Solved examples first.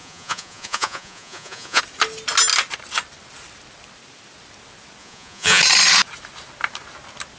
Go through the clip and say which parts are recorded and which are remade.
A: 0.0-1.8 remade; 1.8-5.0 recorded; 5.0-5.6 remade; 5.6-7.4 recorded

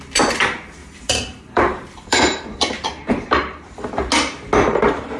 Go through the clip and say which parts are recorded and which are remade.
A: 0.0-0.8 recorded; 0.8-3.9 remade; 3.9-5.2 recorded

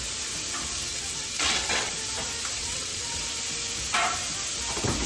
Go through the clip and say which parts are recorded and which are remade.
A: 0.0-0.9 recorded; 0.9-1.9 remade; 1.9-2.6 recorded; 2.6-3.2 remade; 3.2-5.1 recorded

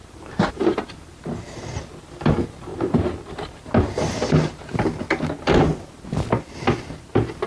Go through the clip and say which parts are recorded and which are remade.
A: 0.0-0.6 remade; 0.6-7.5 recorded

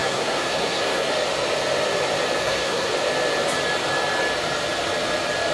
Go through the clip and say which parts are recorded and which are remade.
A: 0.0-1.1 remade; 1.1-2.4 recorded; 2.4-2.9 remade; 2.9-5.5 recorded

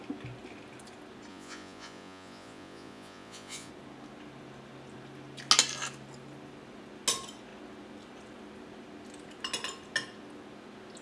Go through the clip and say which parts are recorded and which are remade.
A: 0.0-1.3 recorded; 1.3-3.7 remade; 3.7-11.0 recorded